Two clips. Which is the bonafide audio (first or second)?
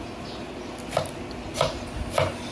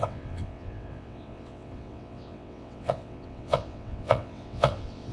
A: first